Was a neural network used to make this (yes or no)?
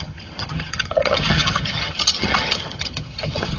yes